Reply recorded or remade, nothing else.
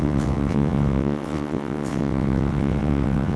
remade